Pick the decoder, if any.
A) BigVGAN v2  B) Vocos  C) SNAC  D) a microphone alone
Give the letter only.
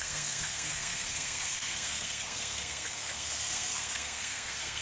C